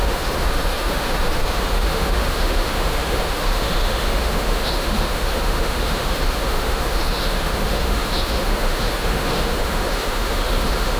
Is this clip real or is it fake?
fake